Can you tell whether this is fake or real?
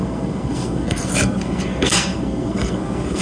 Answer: fake